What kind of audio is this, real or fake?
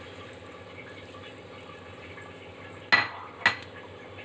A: real